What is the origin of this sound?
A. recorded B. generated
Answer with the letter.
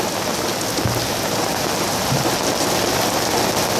A